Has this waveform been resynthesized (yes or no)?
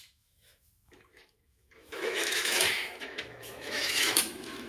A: yes